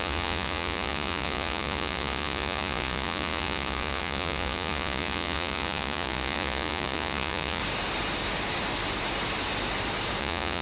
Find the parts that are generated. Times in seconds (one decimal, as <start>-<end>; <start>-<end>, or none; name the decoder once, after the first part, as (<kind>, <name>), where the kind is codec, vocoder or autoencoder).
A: 0.0-7.6 (vocoder, Vocos); 10.2-10.6